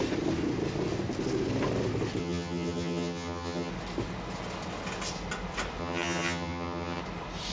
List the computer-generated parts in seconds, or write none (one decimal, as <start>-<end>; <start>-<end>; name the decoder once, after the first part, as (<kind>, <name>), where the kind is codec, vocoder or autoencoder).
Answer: 2.2-3.7 (vocoder, HiFi-GAN); 5.8-7.0